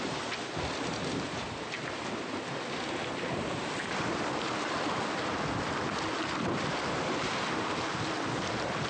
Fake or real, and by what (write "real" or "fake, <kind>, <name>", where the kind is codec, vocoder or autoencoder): real